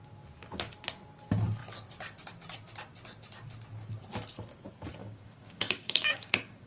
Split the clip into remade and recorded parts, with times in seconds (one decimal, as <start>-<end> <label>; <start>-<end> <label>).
0.0-5.0 recorded; 5.0-6.7 remade